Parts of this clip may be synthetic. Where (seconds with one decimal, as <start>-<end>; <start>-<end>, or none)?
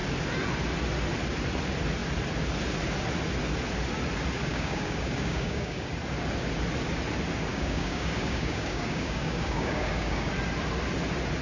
4.5-5.9; 7.5-10.3